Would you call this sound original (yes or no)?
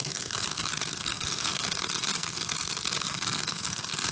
no